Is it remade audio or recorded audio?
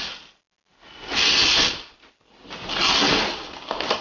recorded